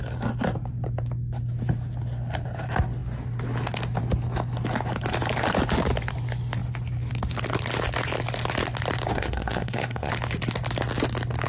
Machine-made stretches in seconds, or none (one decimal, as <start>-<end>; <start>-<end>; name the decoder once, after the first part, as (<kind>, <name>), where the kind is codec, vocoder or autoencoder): 9.1-10.1 (codec, SNAC)